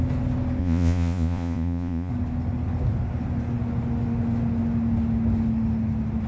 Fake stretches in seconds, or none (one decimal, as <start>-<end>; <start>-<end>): 0.6-2.1

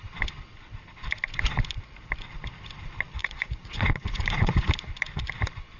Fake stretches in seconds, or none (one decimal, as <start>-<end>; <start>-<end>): 3.2-4.7

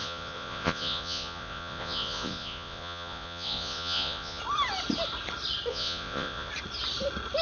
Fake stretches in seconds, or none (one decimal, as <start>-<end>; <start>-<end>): 0.0-4.4; 5.7-6.5